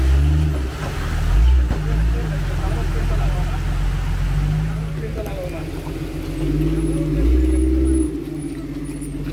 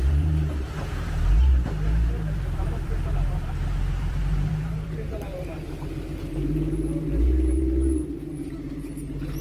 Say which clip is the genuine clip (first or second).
first